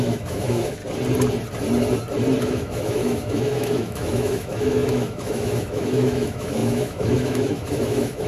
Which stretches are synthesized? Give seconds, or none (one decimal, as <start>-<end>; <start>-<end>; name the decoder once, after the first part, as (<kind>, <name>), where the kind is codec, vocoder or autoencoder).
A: 0.0-0.8 (autoencoder, DAC-VAE); 2.4-8.3